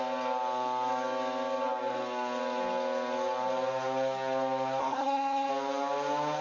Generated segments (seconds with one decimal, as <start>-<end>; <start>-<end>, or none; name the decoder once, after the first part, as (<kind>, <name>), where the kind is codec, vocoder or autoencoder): 4.8-5.5 (codec, SNAC)